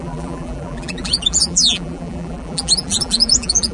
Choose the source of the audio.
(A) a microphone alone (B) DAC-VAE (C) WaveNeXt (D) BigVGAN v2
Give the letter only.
D